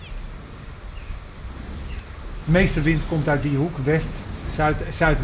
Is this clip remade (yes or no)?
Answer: no